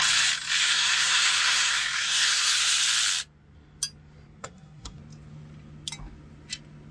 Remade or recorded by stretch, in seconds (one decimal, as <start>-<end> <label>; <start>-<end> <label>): 0.0-0.6 recorded; 0.6-2.8 remade; 2.8-4.4 recorded; 4.4-5.0 remade; 5.0-6.9 recorded